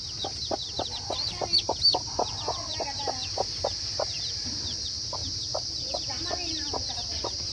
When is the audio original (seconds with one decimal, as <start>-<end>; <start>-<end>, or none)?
0.0-7.5

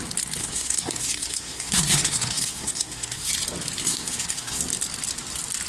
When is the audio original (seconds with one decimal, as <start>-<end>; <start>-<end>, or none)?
0.0-0.4; 3.3-3.8; 4.6-5.7